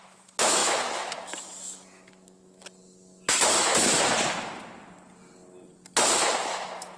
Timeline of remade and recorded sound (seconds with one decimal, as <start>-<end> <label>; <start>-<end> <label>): 0.0-2.6 remade; 2.6-6.5 recorded; 6.5-7.0 remade